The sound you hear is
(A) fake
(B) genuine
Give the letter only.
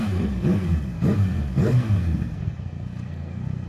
A